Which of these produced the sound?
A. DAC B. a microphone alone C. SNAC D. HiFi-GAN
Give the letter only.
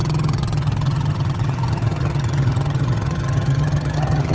D